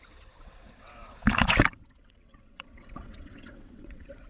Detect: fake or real fake